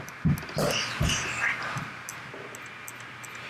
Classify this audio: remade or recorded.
recorded